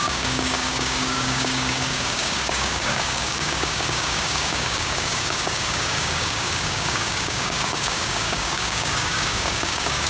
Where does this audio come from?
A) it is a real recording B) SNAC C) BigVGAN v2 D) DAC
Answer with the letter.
D